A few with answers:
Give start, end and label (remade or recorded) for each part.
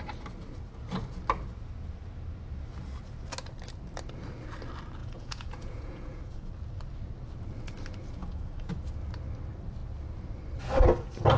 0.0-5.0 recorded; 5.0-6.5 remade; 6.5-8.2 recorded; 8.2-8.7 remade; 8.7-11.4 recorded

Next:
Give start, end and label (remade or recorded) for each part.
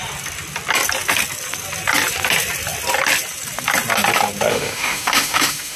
0.0-4.5 recorded; 4.5-5.8 remade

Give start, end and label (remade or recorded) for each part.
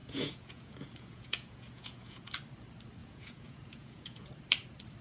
0.0-2.3 remade; 2.3-3.0 recorded; 3.0-4.3 remade; 4.3-5.0 recorded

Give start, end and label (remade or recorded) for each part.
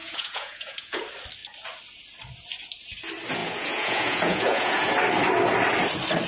0.0-1.0 remade; 1.0-3.4 recorded; 3.4-4.9 remade; 4.9-6.3 recorded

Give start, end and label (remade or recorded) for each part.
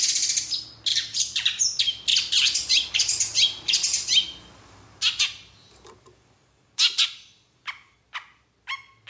0.0-0.9 recorded; 0.9-1.6 remade; 1.6-9.1 recorded